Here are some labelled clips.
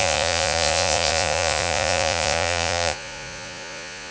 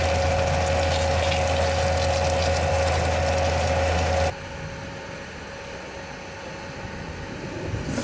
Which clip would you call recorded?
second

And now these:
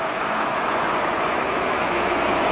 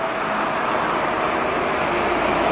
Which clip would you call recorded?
second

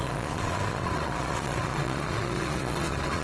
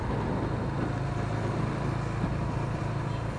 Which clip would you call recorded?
second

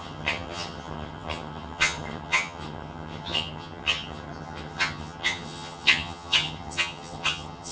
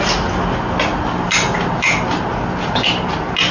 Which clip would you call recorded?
second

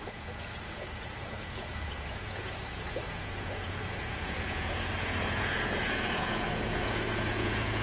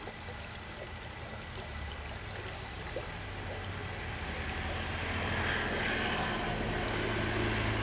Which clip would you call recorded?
second